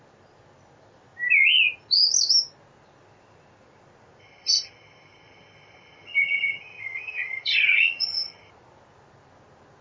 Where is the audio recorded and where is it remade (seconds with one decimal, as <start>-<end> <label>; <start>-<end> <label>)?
0.0-4.2 recorded; 4.2-8.5 remade; 8.5-9.8 recorded